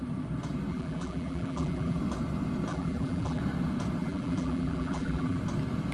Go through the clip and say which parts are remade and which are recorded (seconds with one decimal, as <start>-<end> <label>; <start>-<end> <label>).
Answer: 0.0-0.7 recorded; 0.7-2.0 remade; 2.0-2.7 recorded; 2.7-3.4 remade; 3.4-4.0 recorded; 4.0-5.4 remade; 5.4-5.9 recorded